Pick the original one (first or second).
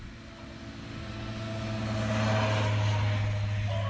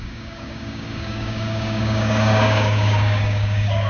first